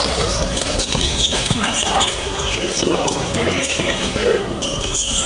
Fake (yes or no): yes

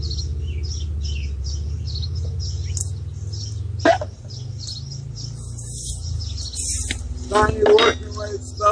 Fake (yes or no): no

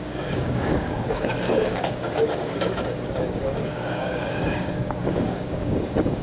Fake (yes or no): yes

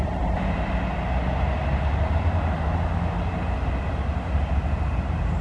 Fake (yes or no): no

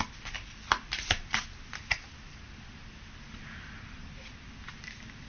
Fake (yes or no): no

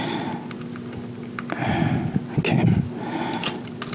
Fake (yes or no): no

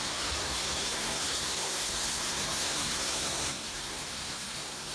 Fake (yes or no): yes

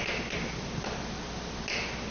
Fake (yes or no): no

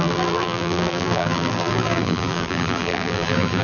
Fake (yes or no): yes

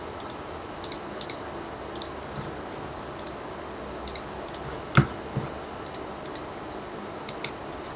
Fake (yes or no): no